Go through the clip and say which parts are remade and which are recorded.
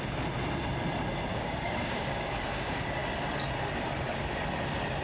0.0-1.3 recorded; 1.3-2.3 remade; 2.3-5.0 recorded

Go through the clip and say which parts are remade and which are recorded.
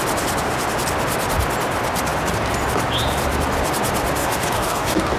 0.0-4.2 recorded; 4.2-5.2 remade